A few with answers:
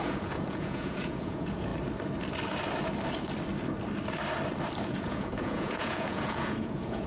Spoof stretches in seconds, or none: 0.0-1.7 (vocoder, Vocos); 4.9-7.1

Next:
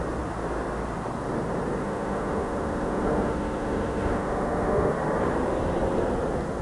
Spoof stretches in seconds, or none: 1.8-4.9 (autoencoder, DAC-VAE)